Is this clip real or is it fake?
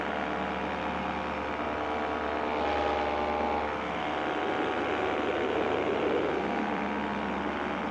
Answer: real